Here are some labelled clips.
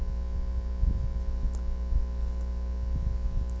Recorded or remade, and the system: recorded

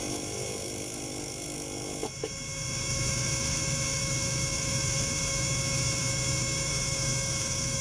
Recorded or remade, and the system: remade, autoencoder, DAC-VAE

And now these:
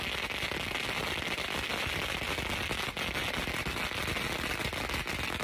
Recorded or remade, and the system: recorded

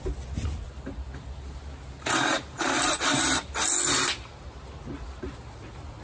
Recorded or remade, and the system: recorded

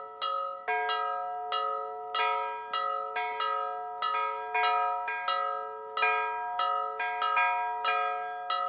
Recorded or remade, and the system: recorded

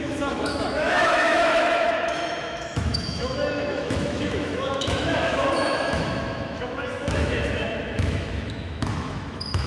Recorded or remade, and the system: remade, autoencoder, DAC-VAE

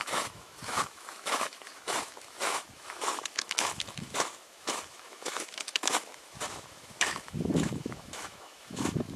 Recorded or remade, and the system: remade, autoencoder, DAC-VAE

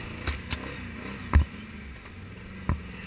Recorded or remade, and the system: recorded